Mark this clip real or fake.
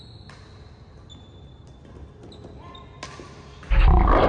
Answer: real